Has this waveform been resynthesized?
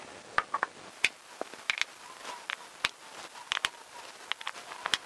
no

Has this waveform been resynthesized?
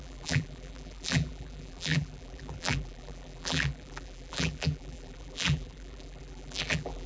yes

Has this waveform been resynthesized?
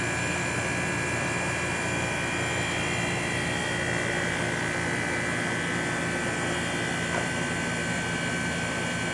no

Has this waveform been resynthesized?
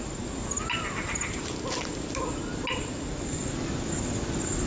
no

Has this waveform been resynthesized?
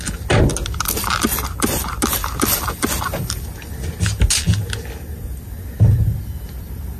no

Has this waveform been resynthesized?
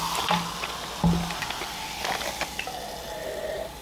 no